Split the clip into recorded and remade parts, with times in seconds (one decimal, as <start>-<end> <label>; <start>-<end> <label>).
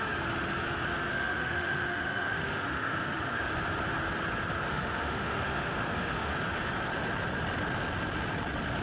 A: 0.0-1.1 recorded; 1.1-3.5 remade; 3.5-4.7 recorded; 4.7-6.3 remade; 6.3-8.8 recorded